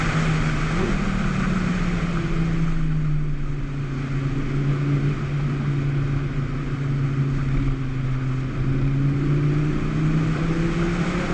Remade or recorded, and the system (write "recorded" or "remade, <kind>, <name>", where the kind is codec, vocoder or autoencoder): recorded